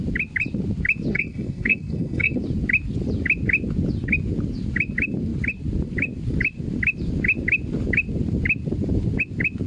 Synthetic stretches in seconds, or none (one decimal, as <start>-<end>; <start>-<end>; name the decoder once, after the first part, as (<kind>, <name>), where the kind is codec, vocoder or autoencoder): 1.1-2.4 (codec, SNAC)